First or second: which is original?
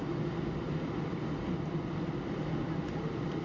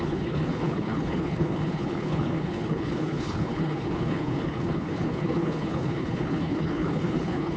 first